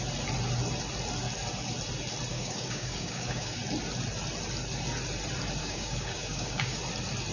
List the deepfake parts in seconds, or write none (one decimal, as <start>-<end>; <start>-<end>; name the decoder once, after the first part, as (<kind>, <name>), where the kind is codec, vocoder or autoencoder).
2.3-3.6 (codec, DAC); 5.6-6.8